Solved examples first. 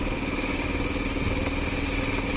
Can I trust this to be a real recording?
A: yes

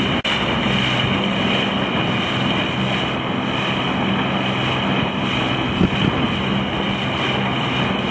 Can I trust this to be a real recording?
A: yes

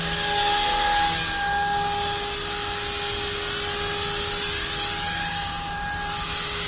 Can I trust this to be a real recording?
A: yes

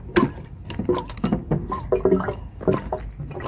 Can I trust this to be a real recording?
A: yes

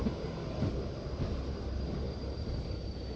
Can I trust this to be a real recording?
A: yes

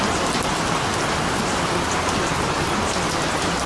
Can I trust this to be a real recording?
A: yes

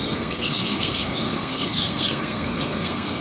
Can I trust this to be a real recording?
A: no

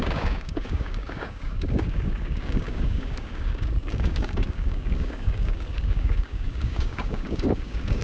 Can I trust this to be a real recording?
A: no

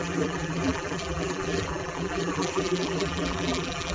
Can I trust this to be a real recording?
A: no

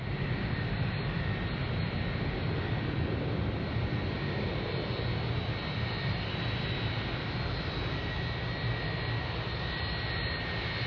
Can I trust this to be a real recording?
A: yes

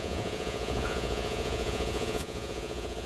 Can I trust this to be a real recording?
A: no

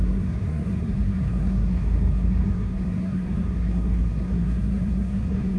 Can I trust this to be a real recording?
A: no